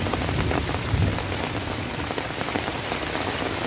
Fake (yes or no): no